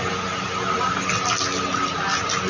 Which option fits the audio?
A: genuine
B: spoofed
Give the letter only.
A